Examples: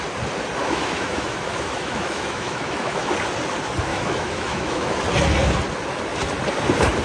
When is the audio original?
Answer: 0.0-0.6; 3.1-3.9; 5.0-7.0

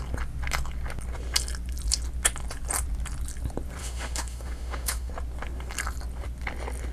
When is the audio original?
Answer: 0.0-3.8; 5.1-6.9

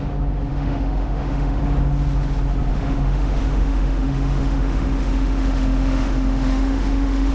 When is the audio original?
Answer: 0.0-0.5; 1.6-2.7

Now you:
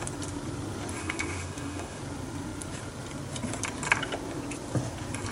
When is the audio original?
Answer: 0.0-1.0; 2.0-5.3

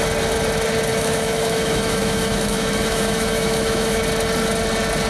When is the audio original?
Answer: 0.0-0.9; 4.0-5.1

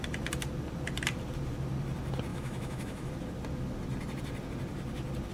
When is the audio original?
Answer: 0.0-2.3; 3.1-5.3

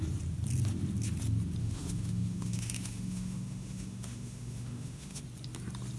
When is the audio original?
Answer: 0.0-1.6; 5.2-6.0